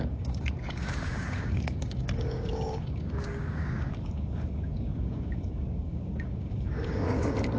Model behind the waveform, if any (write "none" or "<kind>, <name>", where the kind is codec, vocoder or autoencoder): codec, DAC